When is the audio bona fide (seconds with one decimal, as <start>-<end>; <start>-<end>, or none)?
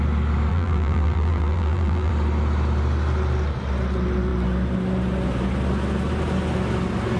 0.0-0.5; 2.1-7.2